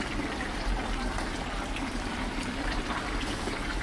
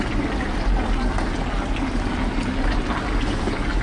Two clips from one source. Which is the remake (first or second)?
first